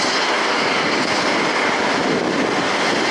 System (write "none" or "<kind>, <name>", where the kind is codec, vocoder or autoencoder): none